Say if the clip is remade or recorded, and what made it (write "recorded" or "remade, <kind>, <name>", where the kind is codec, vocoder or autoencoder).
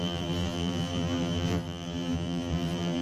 remade, vocoder, BigVGAN v2